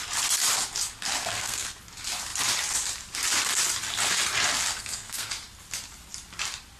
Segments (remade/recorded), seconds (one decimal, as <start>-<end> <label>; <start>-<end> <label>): 0.0-1.2 recorded; 1.2-1.8 remade; 1.8-4.7 recorded; 4.7-5.3 remade; 5.3-6.8 recorded